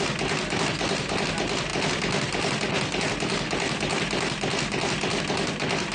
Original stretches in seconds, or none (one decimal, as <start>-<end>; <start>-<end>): 0.0-5.9